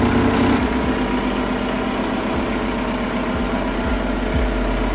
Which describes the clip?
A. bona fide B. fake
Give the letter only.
A